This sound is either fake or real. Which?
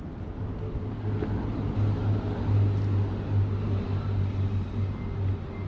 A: real